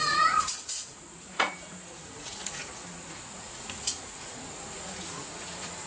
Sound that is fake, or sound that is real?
fake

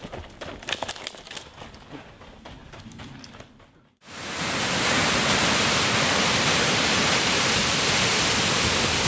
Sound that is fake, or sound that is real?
real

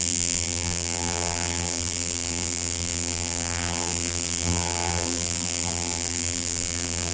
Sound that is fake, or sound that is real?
fake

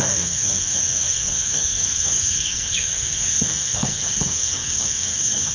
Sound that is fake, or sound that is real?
fake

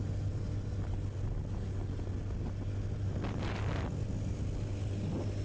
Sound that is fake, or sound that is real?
real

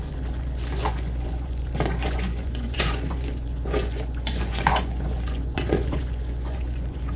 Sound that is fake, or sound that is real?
fake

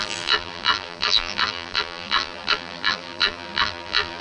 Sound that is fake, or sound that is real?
fake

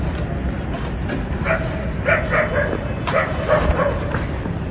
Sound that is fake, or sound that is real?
real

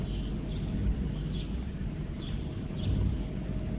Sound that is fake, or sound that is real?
real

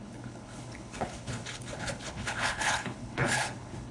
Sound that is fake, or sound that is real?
fake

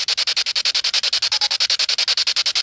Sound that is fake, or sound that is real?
real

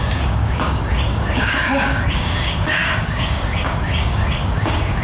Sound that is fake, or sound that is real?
fake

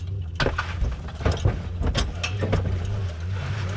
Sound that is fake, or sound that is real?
real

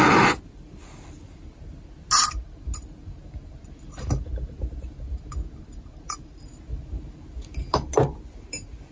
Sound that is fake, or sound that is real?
real